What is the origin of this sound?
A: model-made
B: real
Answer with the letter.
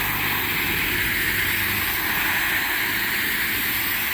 B